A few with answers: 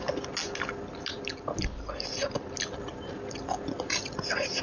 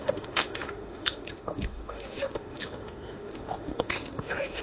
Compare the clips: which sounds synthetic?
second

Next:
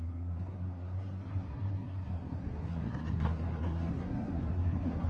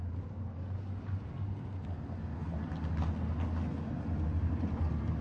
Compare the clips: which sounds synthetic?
first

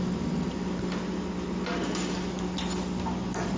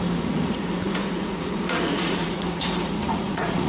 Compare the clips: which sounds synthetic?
second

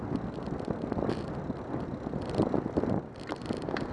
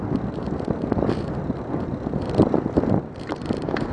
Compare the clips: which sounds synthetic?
second